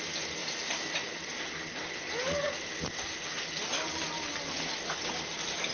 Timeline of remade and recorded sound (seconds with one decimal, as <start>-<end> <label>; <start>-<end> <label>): 0.0-5.7 recorded